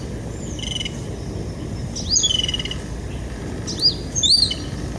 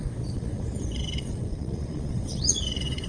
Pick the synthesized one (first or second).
second